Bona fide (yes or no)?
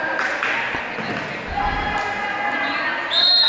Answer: yes